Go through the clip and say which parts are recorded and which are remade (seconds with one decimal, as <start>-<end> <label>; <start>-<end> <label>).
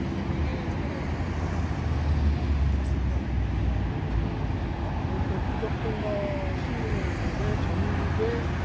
0.0-8.6 recorded